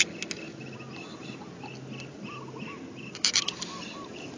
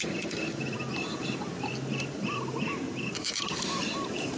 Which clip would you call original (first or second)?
first